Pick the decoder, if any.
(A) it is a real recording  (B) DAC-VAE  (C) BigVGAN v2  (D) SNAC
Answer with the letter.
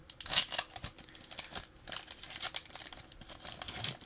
A